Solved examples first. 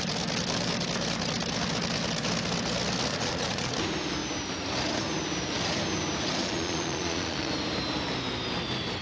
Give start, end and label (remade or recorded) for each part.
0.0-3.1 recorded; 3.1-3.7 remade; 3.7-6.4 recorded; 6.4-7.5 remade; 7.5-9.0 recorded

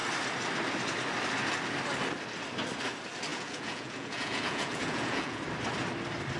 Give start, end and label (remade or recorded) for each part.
0.0-3.3 recorded; 3.3-5.4 remade; 5.4-6.4 recorded

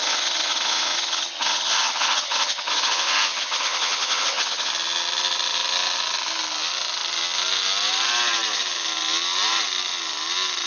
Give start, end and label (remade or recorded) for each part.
0.0-4.7 remade; 4.7-10.7 recorded

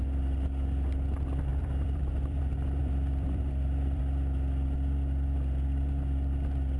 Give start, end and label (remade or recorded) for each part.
0.0-1.5 recorded; 1.5-2.4 remade; 2.4-2.8 recorded; 2.8-4.0 remade; 4.0-6.8 recorded

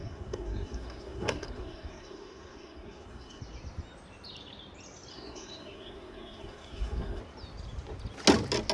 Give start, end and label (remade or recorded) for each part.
0.0-3.4 remade; 3.4-5.1 recorded; 5.1-7.2 remade; 7.2-8.7 recorded

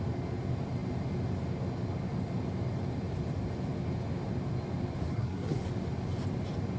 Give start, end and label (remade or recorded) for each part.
0.0-5.1 recorded; 5.1-5.6 remade; 5.6-6.8 recorded

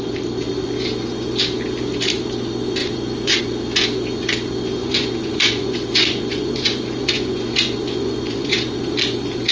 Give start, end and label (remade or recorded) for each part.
0.0-2.8 recorded; 2.8-3.4 remade; 3.4-4.8 recorded; 4.8-8.9 remade; 8.9-9.5 recorded

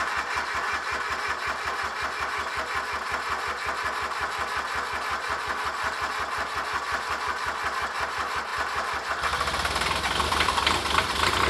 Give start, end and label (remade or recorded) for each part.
0.0-11.5 recorded